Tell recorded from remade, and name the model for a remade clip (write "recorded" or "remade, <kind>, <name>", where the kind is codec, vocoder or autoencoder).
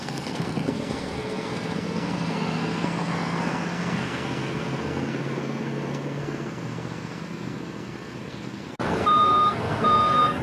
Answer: remade, codec, SNAC